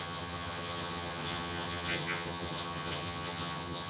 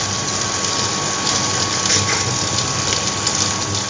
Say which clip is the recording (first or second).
second